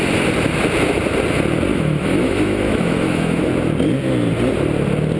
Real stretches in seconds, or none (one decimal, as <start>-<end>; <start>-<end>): 0.0-1.7; 3.4-5.2